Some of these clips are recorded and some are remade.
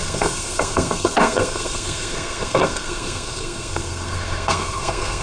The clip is remade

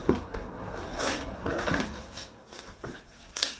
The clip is remade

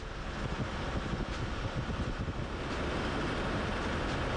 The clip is recorded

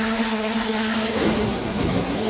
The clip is remade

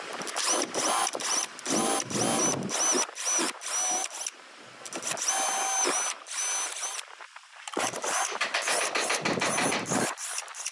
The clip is recorded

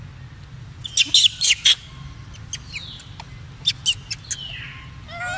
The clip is recorded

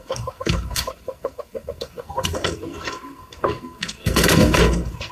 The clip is remade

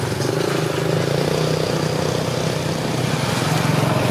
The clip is recorded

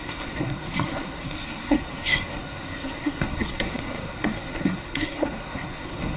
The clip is remade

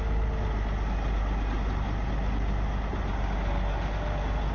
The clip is recorded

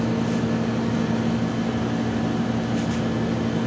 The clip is recorded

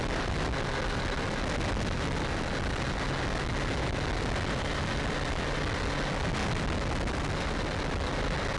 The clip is recorded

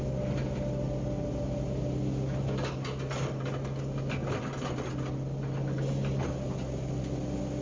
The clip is recorded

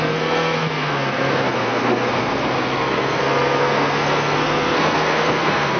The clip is remade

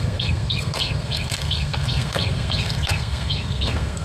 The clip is remade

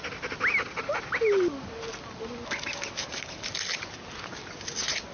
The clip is recorded